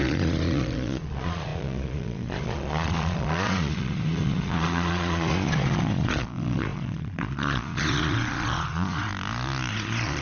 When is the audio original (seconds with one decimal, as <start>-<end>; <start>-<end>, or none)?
9.1-9.7